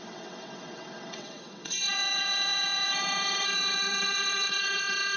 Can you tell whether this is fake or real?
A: fake